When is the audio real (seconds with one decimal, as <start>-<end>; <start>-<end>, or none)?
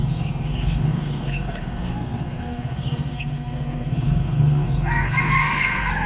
none